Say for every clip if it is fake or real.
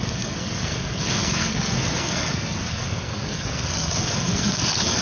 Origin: fake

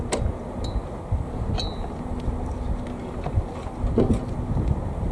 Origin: real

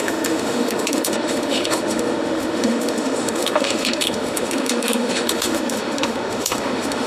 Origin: fake